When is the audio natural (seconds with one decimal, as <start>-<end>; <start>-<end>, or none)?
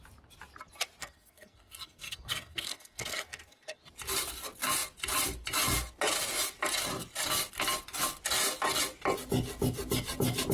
0.0-1.0; 3.8-10.5